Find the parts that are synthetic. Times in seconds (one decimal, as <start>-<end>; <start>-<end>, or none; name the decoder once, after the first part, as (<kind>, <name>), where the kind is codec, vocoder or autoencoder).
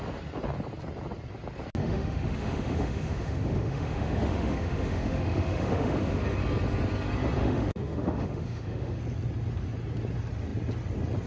1.8-6.2 (autoencoder, DAC-VAE); 7.4-9.0